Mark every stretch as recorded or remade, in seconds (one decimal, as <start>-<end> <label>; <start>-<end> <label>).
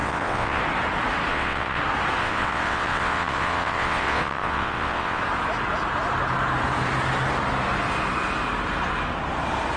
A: 0.0-0.6 remade; 0.6-1.3 recorded; 1.3-1.8 remade; 1.8-2.2 recorded; 2.2-5.2 remade; 5.2-9.8 recorded